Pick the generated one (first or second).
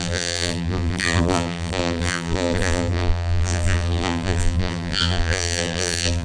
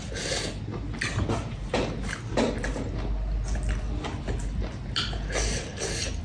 first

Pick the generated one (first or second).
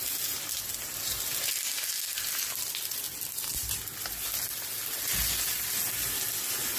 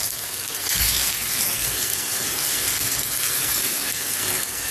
second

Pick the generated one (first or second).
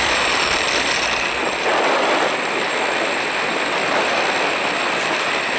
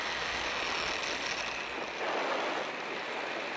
first